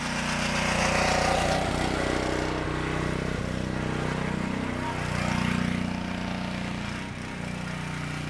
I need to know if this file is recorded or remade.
recorded